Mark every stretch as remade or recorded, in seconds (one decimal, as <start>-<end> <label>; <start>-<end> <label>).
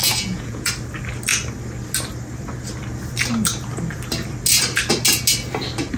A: 0.0-0.7 remade; 0.7-6.0 recorded